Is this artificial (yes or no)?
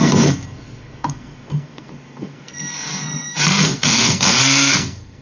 yes